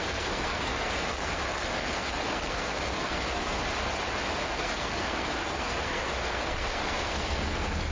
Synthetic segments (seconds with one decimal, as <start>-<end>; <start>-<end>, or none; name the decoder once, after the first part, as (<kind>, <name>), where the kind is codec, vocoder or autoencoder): 0.0-3.6 (codec, SNAC); 4.4-7.9